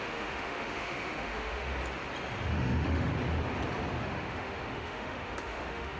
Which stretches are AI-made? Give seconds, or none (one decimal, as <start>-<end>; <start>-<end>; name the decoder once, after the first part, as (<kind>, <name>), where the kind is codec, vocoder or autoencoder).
0.0-1.7 (autoencoder, DAC-VAE); 2.5-3.1; 4.0-6.0